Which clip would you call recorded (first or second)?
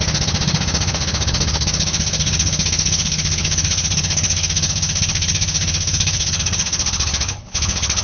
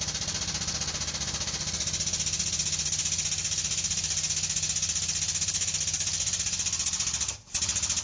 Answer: second